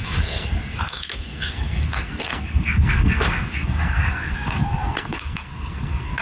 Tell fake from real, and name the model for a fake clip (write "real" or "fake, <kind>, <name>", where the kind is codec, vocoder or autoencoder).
fake, codec, SNAC